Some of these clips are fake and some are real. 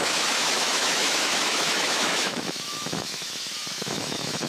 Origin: fake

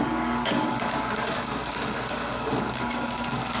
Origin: fake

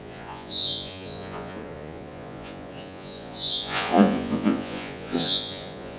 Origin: fake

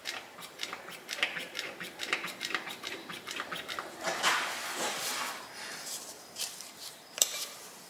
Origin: fake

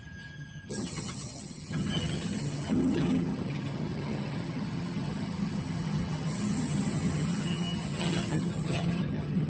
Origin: fake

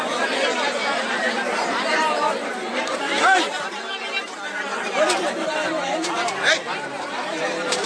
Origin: fake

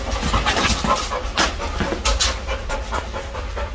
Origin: real